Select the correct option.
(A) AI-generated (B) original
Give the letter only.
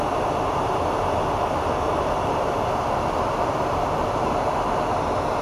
B